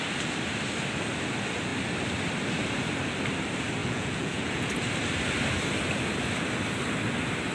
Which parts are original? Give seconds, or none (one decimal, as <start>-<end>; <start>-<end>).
0.0-3.8; 4.7-7.5